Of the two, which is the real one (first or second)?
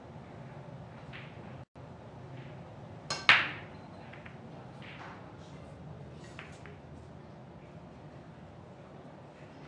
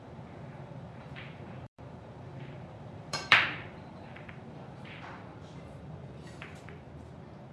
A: first